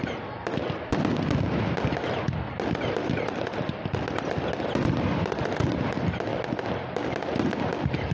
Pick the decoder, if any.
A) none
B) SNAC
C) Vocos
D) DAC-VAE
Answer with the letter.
A